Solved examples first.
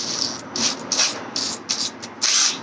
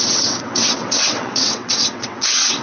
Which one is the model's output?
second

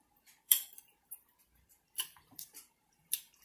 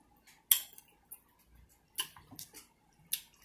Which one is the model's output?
first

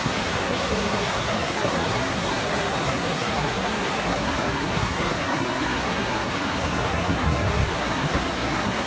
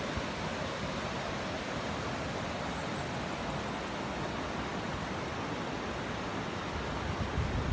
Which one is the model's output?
first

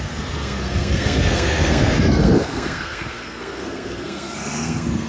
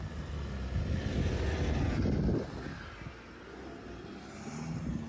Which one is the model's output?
first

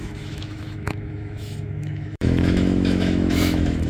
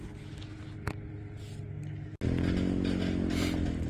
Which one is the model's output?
first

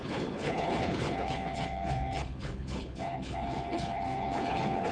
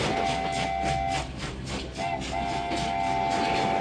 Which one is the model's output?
first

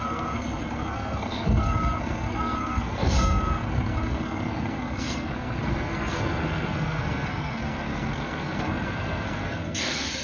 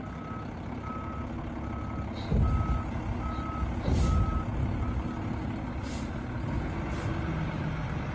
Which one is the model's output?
first